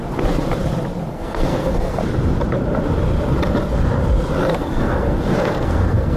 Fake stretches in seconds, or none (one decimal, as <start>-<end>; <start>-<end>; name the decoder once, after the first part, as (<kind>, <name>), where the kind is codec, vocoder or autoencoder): 1.1-2.0 (codec, SNAC); 4.4-6.2